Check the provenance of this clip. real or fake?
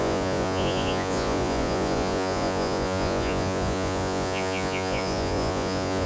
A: fake